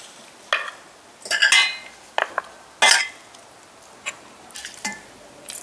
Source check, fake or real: real